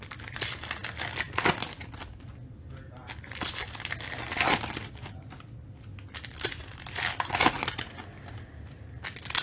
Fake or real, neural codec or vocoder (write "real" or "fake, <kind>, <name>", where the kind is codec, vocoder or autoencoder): real